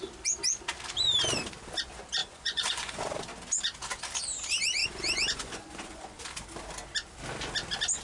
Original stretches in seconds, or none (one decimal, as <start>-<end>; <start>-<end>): 0.0-2.2; 3.0-4.8; 6.2-8.0